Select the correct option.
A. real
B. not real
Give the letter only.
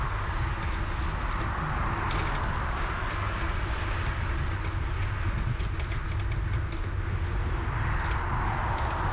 A